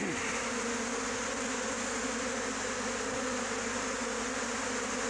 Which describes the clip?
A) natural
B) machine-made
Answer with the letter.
A